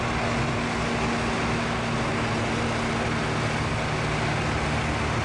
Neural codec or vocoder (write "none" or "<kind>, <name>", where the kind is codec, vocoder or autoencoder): none